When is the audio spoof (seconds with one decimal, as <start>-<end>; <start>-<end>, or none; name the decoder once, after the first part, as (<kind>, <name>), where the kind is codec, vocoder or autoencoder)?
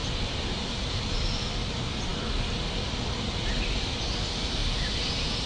none